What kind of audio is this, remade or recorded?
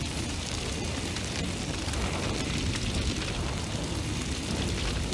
recorded